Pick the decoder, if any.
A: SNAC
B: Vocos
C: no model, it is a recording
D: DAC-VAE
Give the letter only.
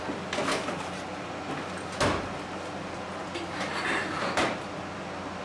C